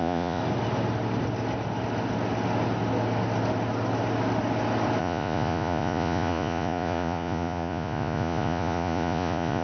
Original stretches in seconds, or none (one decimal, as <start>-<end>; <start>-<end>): 0.4-5.0